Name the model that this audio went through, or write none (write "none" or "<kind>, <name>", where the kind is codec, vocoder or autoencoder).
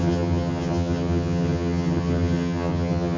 vocoder, HiFi-GAN